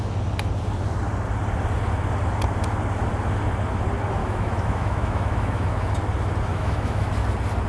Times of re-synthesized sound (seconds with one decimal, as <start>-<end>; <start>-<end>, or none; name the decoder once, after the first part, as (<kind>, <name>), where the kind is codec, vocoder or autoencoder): 4.2-5.9 (autoencoder, DAC-VAE); 6.5-7.1